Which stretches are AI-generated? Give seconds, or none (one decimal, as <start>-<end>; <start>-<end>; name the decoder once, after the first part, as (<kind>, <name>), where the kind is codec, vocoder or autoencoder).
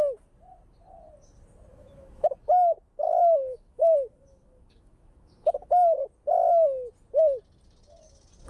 1.7-6.1 (autoencoder, DAC-VAE)